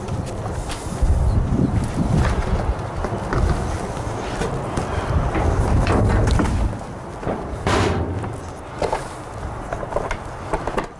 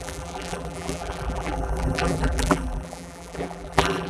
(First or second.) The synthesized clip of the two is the second